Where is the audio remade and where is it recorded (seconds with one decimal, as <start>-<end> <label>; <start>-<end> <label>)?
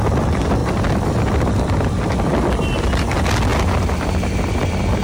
0.0-0.6 recorded; 0.6-1.7 remade; 1.7-3.5 recorded; 3.5-5.0 remade